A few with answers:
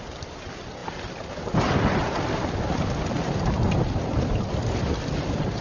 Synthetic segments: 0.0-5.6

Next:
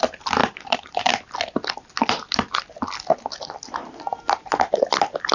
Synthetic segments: 0.4-1.0

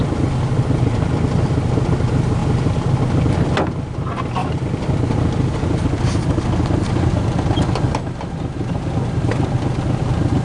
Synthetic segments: 2.4-3.0; 4.4-5.0

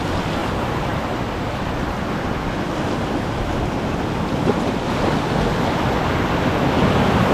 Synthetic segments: 0.4-1.0

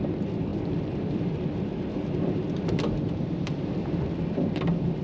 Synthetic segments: 0.5-3.5

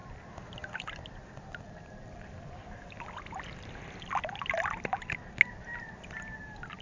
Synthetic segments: none

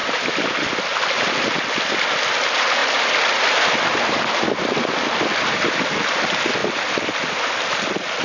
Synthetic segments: 0.0-0.7

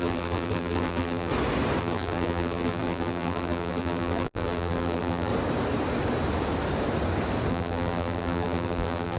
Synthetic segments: 0.0-1.3; 1.8-5.3; 7.5-9.2